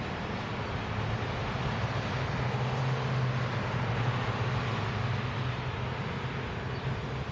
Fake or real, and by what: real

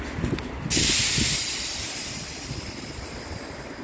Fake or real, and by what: real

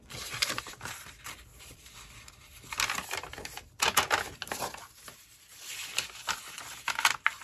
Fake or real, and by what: real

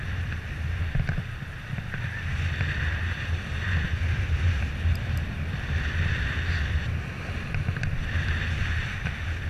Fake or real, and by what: real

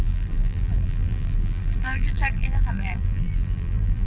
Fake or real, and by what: fake, vocoder, BigVGAN v2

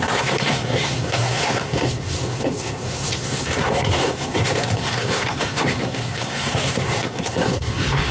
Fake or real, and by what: fake, codec, SNAC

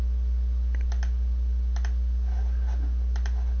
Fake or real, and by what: real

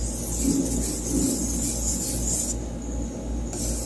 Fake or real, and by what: real